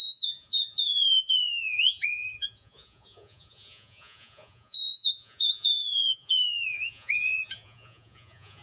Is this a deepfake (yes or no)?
yes